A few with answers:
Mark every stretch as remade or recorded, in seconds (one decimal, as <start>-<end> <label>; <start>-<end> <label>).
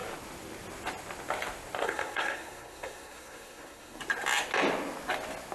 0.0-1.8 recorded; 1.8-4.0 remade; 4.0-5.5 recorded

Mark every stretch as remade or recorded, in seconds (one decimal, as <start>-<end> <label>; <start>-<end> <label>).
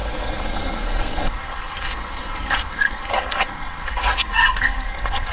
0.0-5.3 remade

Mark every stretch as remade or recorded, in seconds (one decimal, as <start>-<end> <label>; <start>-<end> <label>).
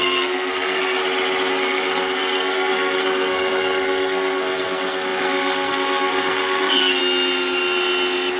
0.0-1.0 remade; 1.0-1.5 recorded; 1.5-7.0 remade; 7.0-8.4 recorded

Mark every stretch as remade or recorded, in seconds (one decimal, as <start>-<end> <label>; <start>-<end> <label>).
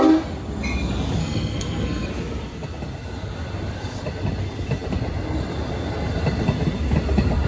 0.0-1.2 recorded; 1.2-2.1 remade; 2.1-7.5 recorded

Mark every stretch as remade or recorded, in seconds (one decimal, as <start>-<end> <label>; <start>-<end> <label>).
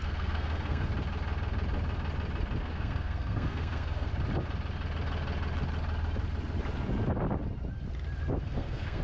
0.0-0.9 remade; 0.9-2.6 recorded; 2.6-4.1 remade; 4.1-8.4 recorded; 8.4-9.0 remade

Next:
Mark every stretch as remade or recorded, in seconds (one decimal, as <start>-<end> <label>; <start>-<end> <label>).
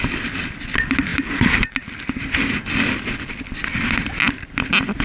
0.0-5.0 recorded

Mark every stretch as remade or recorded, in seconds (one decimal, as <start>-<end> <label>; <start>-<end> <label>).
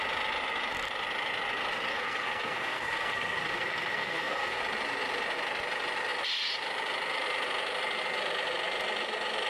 0.0-1.9 recorded; 1.9-4.6 remade; 4.6-9.5 recorded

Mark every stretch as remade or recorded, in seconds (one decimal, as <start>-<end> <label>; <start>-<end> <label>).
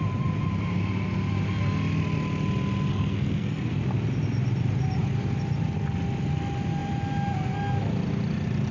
0.0-2.9 recorded; 2.9-3.7 remade; 3.7-8.7 recorded